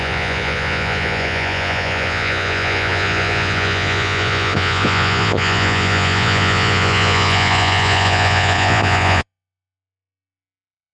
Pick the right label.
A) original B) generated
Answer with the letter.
B